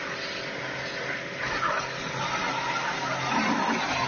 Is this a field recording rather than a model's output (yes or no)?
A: yes